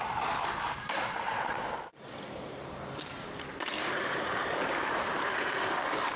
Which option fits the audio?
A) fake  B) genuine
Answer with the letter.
A